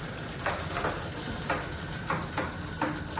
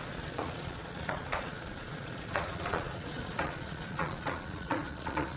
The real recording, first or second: first